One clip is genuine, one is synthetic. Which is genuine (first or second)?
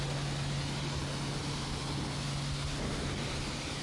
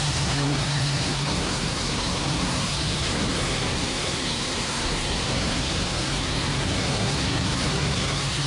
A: first